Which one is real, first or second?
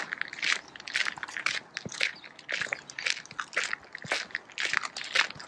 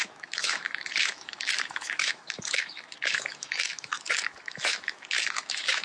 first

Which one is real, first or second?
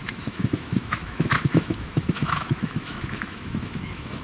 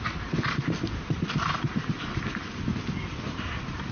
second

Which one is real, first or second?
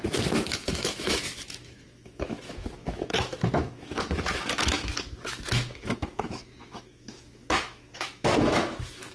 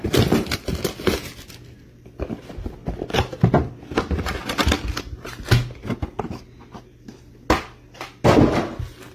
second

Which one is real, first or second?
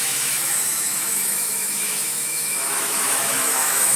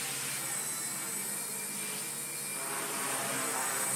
second